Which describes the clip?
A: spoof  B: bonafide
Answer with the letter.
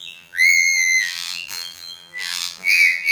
A